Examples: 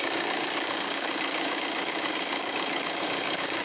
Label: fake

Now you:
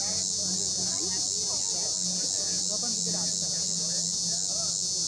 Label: real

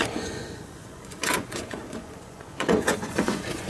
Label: fake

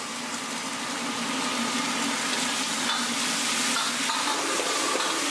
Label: real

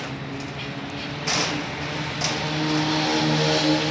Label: real